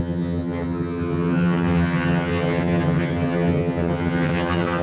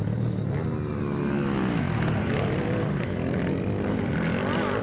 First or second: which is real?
second